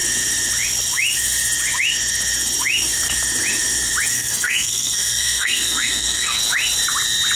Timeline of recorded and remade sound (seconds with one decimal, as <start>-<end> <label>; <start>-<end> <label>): 0.0-4.1 recorded; 4.1-6.4 remade; 6.4-7.4 recorded